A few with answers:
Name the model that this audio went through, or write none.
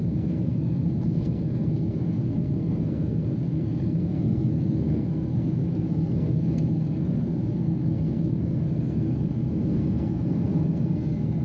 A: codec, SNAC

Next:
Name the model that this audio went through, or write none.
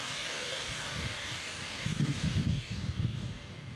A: codec, DAC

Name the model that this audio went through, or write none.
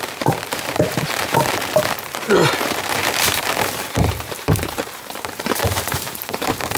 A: vocoder, BigVGAN v2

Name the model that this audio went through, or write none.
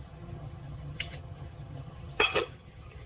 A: vocoder, HiFi-GAN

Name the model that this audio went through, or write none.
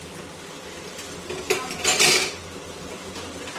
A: none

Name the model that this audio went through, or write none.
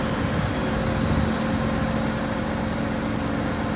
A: none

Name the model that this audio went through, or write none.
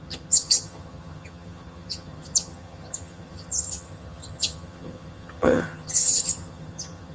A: vocoder, HiFi-GAN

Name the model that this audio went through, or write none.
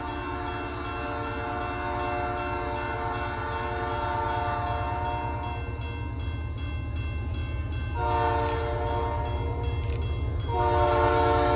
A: none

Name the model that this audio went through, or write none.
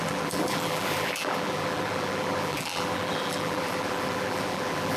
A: vocoder, BigVGAN v2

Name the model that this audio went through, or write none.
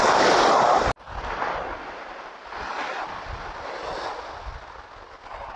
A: none